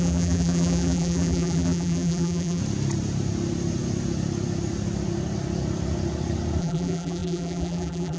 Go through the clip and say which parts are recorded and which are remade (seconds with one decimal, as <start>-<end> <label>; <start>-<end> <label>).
0.0-2.6 remade; 2.6-6.6 recorded; 6.6-8.2 remade